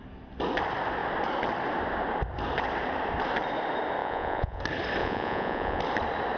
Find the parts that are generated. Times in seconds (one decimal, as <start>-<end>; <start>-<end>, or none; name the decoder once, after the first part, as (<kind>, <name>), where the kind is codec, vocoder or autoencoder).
4.0-4.6 (vocoder, Vocos); 5.0-5.8

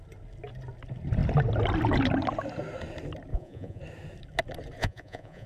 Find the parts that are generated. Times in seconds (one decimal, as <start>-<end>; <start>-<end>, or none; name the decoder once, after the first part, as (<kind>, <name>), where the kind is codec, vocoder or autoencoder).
3.3-3.8 (vocoder, Vocos); 4.8-5.5

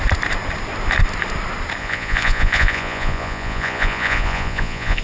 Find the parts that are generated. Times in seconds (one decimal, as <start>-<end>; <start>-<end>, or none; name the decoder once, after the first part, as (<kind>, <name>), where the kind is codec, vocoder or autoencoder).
1.8-5.0 (vocoder, Vocos)

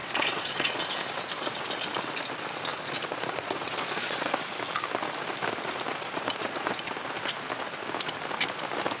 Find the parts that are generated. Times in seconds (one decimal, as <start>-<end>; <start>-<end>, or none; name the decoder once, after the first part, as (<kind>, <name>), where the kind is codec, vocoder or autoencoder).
0.0-0.8 (vocoder, Vocos); 2.7-4.3; 5.9-6.9

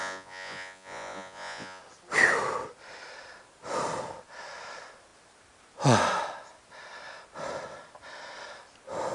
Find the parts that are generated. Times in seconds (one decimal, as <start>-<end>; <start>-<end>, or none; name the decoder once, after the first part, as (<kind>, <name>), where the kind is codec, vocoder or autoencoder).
0.0-1.8 (vocoder, Vocos)

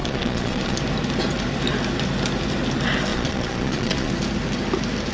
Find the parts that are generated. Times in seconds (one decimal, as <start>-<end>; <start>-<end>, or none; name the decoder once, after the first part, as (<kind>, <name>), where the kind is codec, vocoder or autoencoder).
0.0-0.8 (vocoder, Vocos); 3.1-4.1

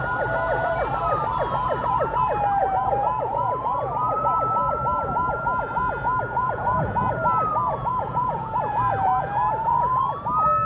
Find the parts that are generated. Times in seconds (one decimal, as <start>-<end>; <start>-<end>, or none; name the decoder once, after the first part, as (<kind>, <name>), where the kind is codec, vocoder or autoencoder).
2.6-7.1 (vocoder, Vocos); 7.5-10.0

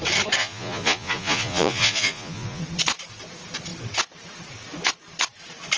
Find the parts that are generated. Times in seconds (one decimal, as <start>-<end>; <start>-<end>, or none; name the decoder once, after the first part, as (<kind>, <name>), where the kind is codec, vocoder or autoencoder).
0.4-2.6 (vocoder, Vocos)